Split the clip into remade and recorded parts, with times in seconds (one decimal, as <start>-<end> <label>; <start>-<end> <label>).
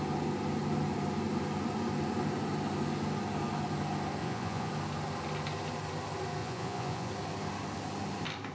0.0-4.2 recorded; 4.2-4.7 remade; 4.7-6.4 recorded; 6.4-7.1 remade; 7.1-8.5 recorded